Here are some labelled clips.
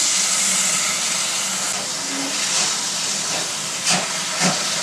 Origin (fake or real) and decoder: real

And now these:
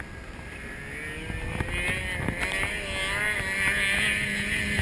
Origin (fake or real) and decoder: real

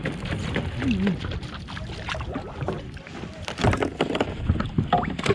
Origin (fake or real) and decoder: real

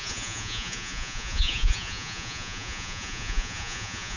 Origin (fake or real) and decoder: fake, vocoder, Vocos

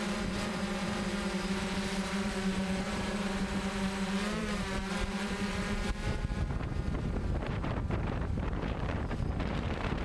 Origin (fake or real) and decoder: fake, vocoder, BigVGAN v2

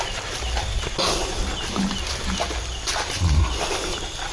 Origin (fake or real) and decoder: real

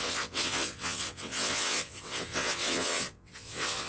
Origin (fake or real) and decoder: fake, vocoder, WaveNeXt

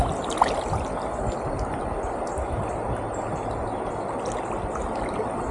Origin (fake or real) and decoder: real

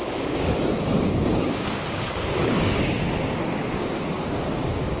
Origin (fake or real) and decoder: fake, codec, DAC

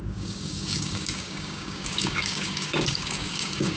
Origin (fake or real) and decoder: fake, codec, DAC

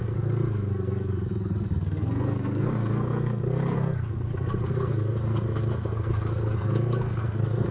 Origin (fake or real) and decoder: fake, codec, SNAC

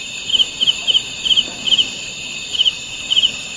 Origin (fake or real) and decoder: real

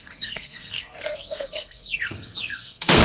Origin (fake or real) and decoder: fake, codec, SNAC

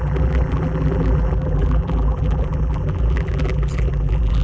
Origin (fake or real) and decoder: fake, vocoder, BigVGAN v2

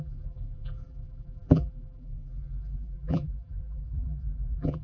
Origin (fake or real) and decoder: fake, vocoder, BigVGAN v2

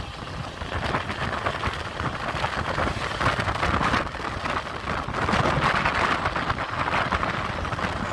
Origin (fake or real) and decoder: real